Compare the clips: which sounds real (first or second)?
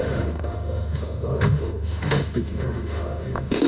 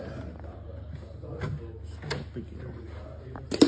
second